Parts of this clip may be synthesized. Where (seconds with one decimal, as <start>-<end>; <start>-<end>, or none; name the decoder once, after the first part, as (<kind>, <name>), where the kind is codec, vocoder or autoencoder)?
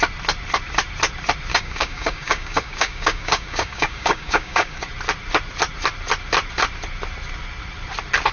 1.5-4.9 (codec, DAC)